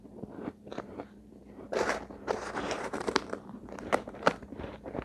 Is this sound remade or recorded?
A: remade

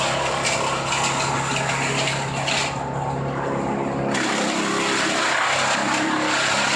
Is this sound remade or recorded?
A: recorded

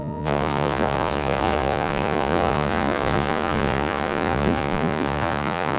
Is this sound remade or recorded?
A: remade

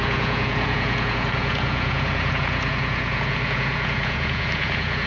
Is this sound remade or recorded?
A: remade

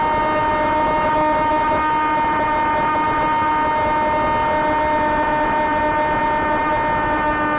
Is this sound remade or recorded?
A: recorded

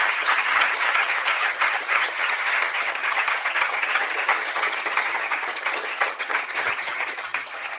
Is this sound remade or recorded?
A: remade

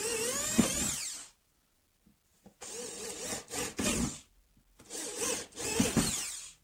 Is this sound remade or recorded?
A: recorded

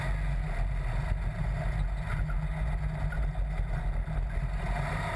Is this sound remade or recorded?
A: recorded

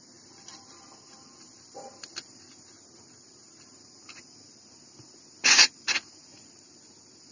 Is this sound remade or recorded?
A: recorded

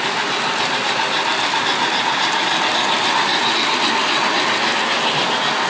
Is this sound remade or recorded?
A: recorded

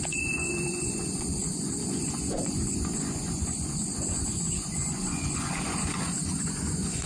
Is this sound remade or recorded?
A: remade